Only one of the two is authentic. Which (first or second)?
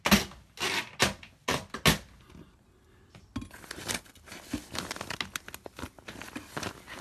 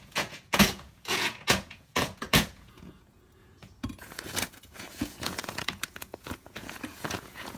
first